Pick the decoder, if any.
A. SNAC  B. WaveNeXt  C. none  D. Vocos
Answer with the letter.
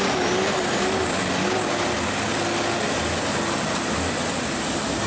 C